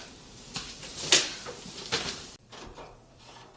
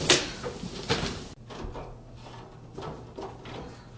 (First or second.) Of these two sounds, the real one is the second